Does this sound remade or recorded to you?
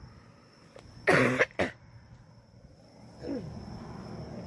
recorded